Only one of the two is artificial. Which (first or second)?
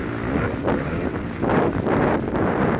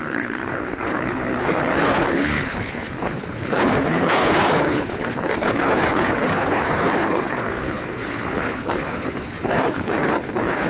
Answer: second